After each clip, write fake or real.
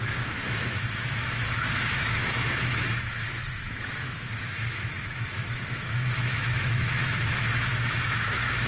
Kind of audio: fake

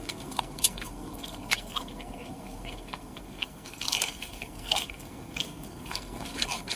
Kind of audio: fake